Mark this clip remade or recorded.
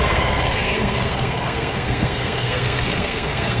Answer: remade